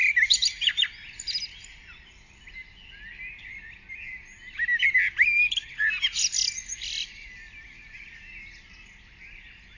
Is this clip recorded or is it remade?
recorded